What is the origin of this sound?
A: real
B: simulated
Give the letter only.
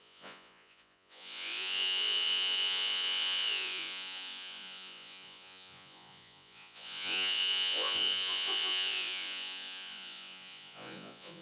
B